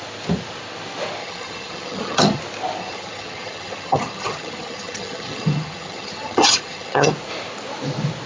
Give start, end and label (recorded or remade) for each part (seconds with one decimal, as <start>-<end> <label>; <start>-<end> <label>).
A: 0.0-1.2 recorded; 1.2-2.4 remade; 2.4-2.8 recorded; 2.8-7.1 remade; 7.1-8.3 recorded